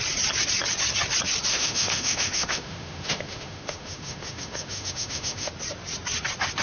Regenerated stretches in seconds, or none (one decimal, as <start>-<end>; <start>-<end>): 1.5-5.5